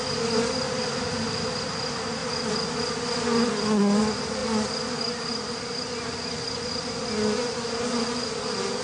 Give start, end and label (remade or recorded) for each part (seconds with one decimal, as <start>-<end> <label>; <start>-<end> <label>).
0.0-8.8 recorded